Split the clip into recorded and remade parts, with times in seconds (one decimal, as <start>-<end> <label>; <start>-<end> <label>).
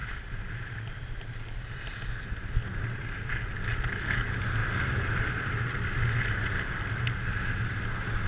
0.0-8.3 recorded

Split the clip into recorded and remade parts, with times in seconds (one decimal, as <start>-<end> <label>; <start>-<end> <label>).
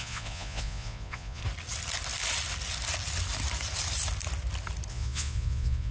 0.0-1.4 remade; 1.4-4.9 recorded; 4.9-5.9 remade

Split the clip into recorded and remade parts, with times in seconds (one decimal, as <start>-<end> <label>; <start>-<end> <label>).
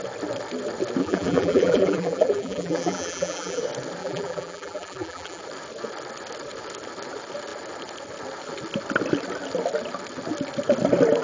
0.0-1.0 recorded; 1.0-3.6 remade; 3.6-4.0 recorded; 4.0-5.4 remade; 5.4-11.2 recorded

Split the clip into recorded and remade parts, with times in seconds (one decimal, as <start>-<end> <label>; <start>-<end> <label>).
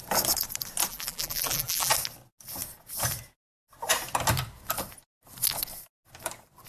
0.0-0.9 recorded; 0.9-1.9 remade; 1.9-6.7 recorded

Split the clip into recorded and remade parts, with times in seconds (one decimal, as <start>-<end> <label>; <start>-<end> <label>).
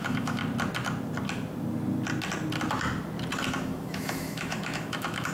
0.0-0.4 remade; 0.4-3.5 recorded; 3.5-5.3 remade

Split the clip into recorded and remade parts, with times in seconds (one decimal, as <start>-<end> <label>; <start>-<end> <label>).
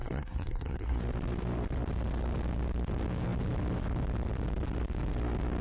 0.0-1.0 remade; 1.0-5.6 recorded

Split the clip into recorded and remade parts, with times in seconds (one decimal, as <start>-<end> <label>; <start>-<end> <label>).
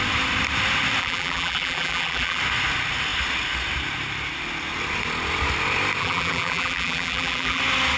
0.0-1.0 recorded; 1.0-2.4 remade; 2.4-6.0 recorded; 6.0-7.6 remade; 7.6-8.0 recorded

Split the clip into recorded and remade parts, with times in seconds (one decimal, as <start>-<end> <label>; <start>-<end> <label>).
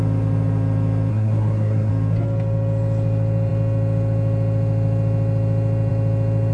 0.0-1.1 recorded; 1.1-1.9 remade; 1.9-6.5 recorded